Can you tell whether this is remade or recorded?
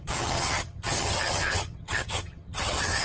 remade